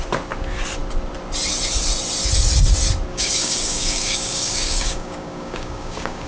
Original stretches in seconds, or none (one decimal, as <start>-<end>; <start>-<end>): 0.0-3.1